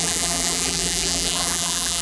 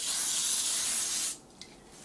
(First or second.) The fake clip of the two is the first